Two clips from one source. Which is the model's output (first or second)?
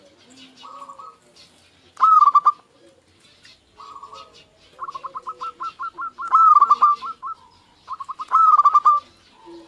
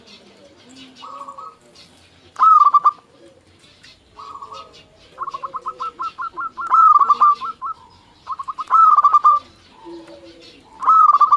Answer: second